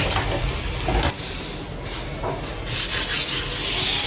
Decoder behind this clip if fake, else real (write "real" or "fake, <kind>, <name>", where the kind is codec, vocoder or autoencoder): real